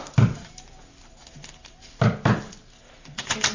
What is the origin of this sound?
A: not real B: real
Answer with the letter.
B